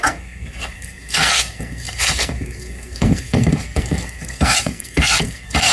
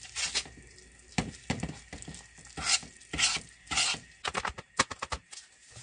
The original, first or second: second